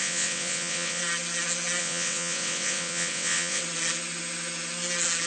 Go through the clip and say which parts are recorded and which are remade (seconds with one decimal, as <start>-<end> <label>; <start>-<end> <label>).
0.0-1.0 remade; 1.0-1.8 recorded; 1.8-3.6 remade; 3.6-5.3 recorded